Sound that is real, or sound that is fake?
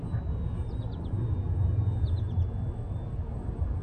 real